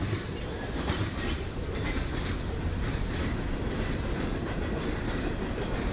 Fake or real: real